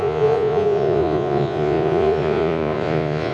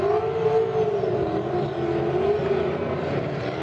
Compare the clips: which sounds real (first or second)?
second